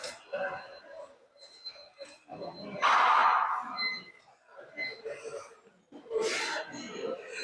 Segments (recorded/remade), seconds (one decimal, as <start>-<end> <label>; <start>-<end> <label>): 0.0-7.4 recorded